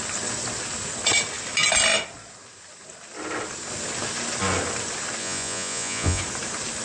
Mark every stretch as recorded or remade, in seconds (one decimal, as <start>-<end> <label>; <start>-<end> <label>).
0.0-5.2 recorded; 5.2-6.2 remade; 6.2-6.8 recorded